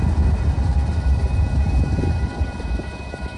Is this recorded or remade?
remade